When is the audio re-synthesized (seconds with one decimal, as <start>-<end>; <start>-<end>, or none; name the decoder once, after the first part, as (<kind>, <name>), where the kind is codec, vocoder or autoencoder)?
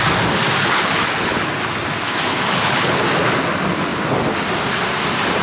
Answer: 0.6-1.5 (codec, HILCodec); 2.3-3.0